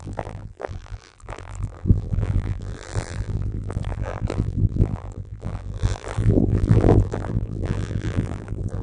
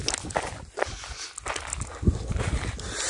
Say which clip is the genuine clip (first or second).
second